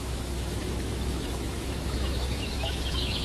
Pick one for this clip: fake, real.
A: fake